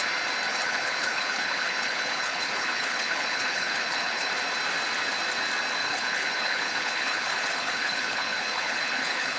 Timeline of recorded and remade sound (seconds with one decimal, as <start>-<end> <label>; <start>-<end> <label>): 0.0-0.5 recorded; 0.5-4.3 remade; 4.3-5.8 recorded; 5.8-9.4 remade